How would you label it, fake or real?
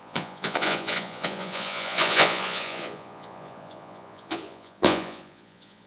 fake